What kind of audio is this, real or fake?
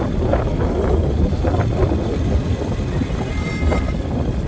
real